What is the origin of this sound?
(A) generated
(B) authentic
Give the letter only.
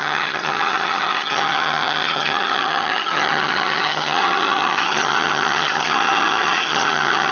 A